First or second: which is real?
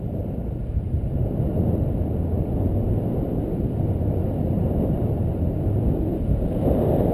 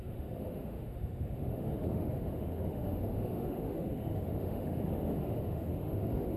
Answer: first